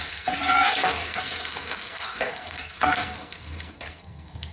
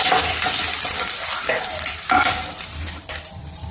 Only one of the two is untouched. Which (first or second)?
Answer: second